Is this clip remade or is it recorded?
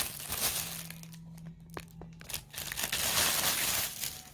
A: recorded